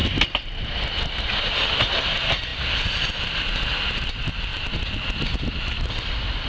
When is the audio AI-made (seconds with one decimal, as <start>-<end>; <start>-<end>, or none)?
none

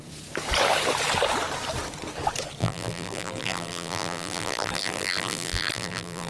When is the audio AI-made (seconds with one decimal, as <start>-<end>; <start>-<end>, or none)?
2.6-6.3

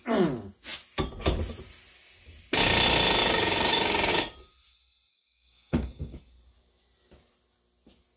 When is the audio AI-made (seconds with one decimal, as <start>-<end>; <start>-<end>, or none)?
3.2-4.1; 5.1-6.2

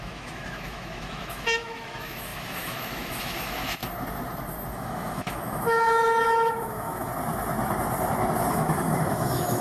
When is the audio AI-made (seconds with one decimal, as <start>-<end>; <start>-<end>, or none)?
0.0-3.8; 4.7-7.1; 8.5-9.6

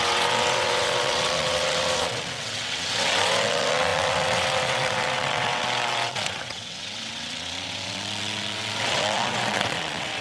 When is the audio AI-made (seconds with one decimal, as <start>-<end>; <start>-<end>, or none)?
0.0-10.2